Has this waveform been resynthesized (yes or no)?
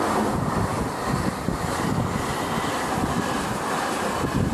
no